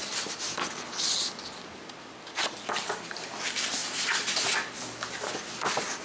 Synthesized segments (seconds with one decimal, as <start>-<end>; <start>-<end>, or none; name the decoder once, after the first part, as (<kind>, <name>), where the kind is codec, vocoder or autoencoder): 3.8-4.5 (vocoder, BigVGAN v2)